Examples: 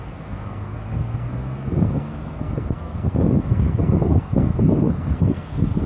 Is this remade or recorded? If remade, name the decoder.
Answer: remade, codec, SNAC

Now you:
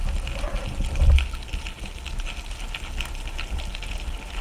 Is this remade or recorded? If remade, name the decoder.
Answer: recorded